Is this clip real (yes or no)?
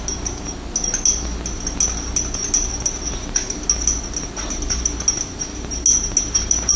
yes